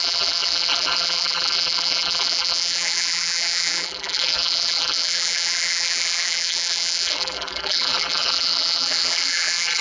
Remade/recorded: remade